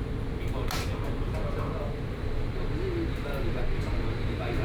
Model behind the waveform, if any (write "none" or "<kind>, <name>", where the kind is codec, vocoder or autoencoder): none